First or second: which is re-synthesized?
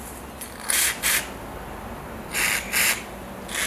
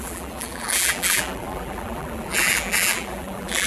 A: second